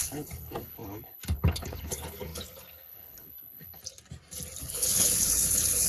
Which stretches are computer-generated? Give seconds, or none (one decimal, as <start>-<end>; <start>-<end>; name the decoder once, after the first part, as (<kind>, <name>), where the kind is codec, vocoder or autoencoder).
0.0-3.8 (codec, HILCodec); 4.6-5.9